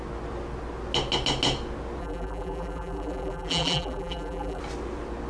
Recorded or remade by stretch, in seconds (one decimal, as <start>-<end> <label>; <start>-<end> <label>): 0.0-2.0 recorded; 2.0-4.6 remade; 4.6-5.3 recorded